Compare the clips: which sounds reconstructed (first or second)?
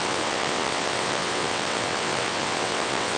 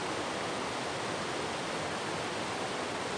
first